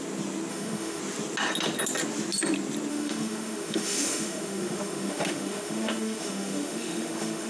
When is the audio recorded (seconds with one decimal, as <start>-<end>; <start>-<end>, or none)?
0.0-0.5; 1.0-2.9